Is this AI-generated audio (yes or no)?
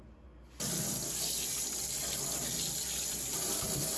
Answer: no